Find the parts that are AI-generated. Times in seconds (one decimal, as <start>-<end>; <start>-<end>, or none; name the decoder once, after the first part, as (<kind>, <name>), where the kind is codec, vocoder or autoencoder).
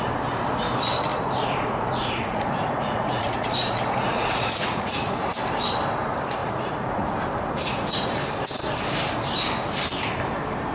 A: 1.1-5.2 (vocoder, Vocos); 6.4-7.1; 7.6-8.1